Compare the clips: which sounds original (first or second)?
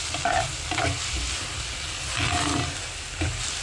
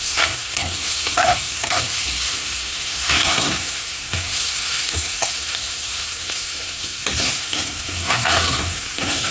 first